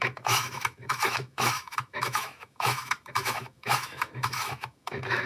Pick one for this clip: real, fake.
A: fake